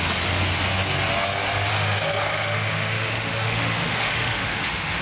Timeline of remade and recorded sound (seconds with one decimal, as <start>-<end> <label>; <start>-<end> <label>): 0.0-1.7 recorded; 1.7-5.0 remade